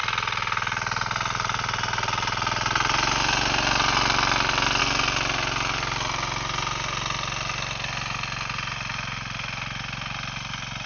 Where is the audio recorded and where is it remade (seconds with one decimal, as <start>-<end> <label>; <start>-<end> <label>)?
0.0-10.9 recorded